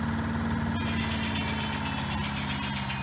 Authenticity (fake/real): real